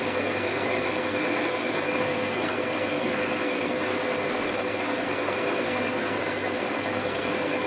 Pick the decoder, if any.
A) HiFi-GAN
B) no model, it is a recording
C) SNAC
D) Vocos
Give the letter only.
C